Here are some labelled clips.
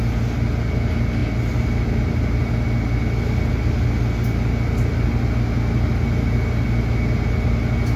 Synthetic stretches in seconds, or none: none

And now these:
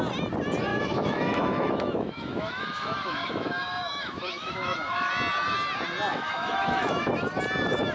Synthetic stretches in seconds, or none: 0.7-5.1 (autoencoder, DAC-VAE); 6.1-7.1

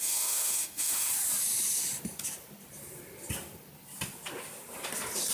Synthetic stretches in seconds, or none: 0.0-1.1 (autoencoder, DAC-VAE)

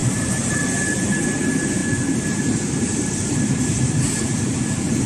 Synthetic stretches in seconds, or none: 0.0-0.9 (vocoder, BigVGAN v2); 1.8-3.9

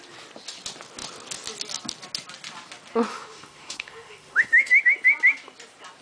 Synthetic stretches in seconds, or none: 3.1-4.8 (autoencoder, DAC-VAE)